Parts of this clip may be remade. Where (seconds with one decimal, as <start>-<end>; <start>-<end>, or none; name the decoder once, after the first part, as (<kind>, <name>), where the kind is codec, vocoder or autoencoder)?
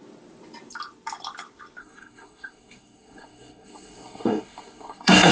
1.8-5.3 (codec, SNAC)